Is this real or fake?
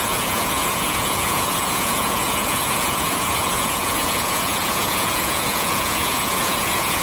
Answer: fake